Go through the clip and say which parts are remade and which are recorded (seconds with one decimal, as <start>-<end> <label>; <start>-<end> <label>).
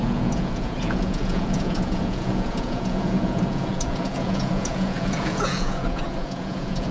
0.0-6.9 remade